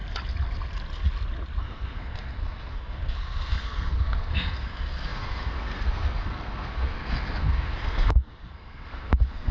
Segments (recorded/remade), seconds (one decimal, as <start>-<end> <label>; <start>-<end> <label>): 0.0-1.6 recorded; 1.6-9.5 remade